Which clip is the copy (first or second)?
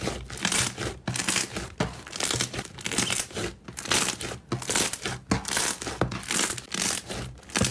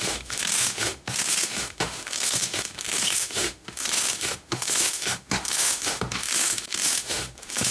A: second